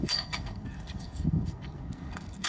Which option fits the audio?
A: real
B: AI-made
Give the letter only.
B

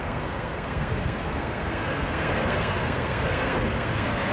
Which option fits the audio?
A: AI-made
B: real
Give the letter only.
A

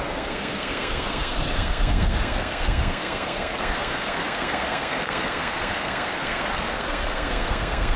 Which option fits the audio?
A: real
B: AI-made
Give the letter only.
B